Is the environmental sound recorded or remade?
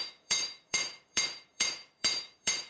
remade